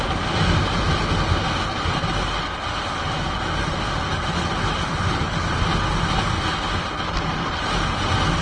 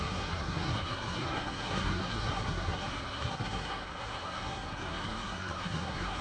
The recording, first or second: first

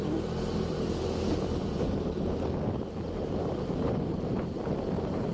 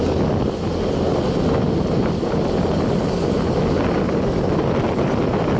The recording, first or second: second